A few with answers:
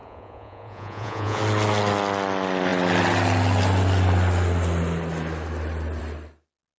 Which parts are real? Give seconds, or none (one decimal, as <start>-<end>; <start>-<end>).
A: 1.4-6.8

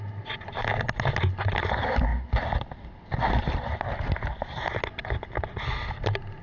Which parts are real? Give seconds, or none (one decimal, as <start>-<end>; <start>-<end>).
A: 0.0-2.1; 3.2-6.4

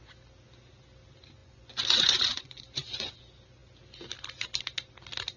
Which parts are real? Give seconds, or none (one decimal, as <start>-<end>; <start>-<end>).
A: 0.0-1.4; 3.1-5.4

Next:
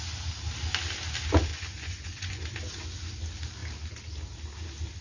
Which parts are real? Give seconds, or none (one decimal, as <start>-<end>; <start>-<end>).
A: 0.0-1.5; 2.4-5.0

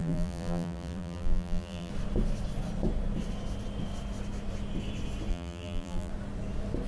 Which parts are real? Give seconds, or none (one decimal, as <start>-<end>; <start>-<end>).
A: 1.9-5.3; 6.1-6.9

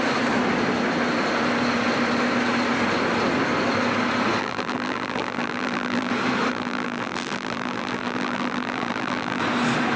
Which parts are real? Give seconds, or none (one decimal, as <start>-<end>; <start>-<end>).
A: 0.0-4.4; 6.1-6.5; 9.4-10.0

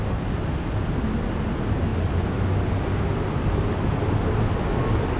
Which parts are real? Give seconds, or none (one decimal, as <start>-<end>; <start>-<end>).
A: 0.0-5.2

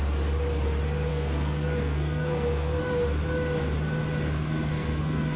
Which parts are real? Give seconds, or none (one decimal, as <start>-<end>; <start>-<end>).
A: 0.0-1.1; 2.8-4.7